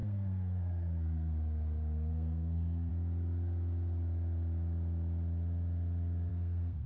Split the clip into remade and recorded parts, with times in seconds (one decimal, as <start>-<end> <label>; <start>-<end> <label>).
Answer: 0.0-2.9 remade; 2.9-6.3 recorded; 6.3-6.9 remade